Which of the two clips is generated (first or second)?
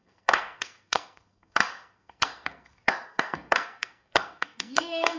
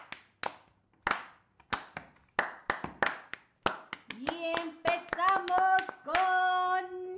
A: first